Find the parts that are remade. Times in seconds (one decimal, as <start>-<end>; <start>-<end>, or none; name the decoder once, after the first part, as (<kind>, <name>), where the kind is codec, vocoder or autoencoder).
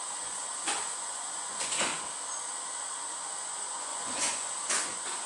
0.0-1.9 (vocoder, Vocos); 3.1-5.3